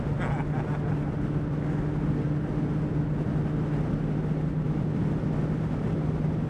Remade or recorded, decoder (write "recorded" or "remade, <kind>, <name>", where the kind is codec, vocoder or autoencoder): recorded